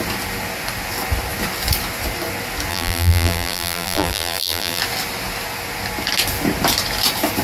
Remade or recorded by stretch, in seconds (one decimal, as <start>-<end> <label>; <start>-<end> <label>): 0.0-2.7 recorded; 2.7-4.8 remade; 4.8-7.4 recorded